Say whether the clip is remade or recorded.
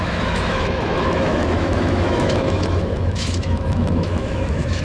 remade